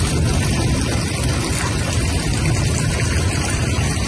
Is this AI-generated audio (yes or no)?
no